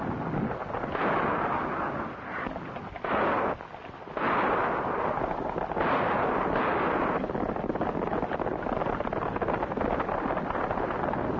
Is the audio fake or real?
real